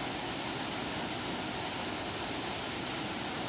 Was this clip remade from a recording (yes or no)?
no